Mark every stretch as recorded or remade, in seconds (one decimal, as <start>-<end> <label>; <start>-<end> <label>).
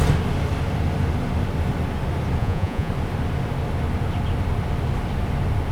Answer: 0.0-2.4 recorded; 2.4-2.9 remade; 2.9-5.7 recorded